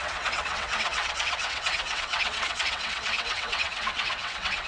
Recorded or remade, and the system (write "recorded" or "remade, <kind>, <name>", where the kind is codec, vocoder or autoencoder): remade, vocoder, WaveNeXt